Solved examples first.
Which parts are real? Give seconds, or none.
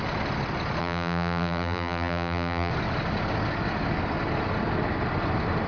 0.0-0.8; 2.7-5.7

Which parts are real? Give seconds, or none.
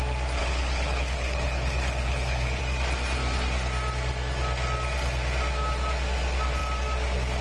0.0-0.4; 2.6-7.4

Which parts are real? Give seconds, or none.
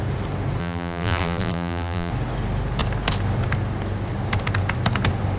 0.0-0.6; 2.1-5.4